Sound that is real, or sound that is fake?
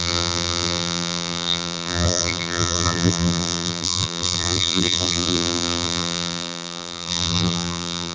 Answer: fake